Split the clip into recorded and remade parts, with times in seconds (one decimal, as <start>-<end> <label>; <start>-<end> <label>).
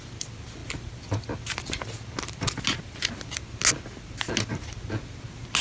0.0-5.6 recorded